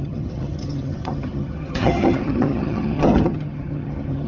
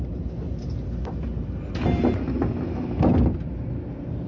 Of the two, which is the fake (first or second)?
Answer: first